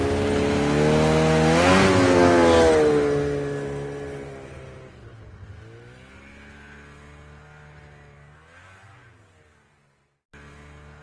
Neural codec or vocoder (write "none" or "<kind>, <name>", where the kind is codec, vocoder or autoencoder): none